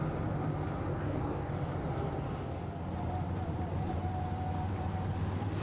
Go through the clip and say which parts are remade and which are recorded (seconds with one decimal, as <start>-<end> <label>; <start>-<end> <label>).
0.0-0.9 recorded; 0.9-1.5 remade; 1.5-5.6 recorded